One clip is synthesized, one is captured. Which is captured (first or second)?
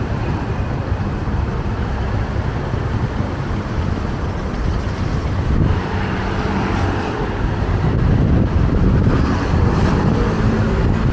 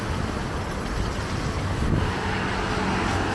second